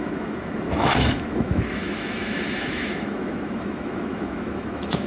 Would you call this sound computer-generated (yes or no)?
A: yes